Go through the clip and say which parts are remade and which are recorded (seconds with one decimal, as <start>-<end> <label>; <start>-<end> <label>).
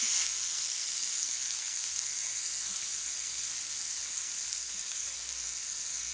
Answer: 0.0-6.1 remade